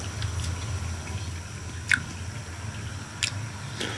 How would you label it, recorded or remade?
recorded